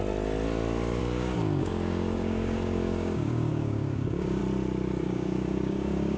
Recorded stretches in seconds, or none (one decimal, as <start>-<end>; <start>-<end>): 0.0-1.0; 4.4-5.0

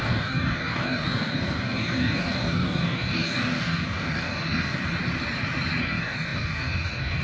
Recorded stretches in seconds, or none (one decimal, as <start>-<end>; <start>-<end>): 4.8-5.8

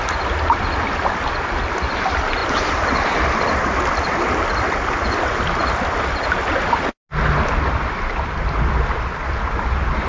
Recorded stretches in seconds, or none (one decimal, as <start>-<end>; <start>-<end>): 0.0-10.1

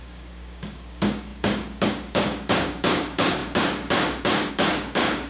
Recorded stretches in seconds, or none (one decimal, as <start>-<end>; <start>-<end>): none

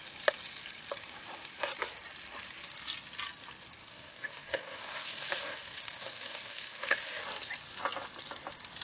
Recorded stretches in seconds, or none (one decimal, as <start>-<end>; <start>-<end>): 0.0-3.9; 7.2-8.8